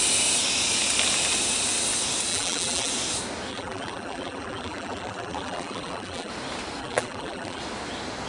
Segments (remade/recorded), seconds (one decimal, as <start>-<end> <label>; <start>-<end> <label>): 0.0-2.3 recorded; 2.3-2.9 remade; 2.9-3.5 recorded; 3.5-6.3 remade; 6.3-6.8 recorded; 6.8-7.6 remade; 7.6-8.3 recorded